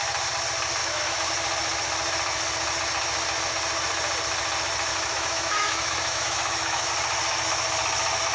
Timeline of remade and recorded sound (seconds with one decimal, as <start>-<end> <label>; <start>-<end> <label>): 0.0-0.8 recorded; 0.8-1.3 remade; 1.3-4.9 recorded; 4.9-6.9 remade; 6.9-8.3 recorded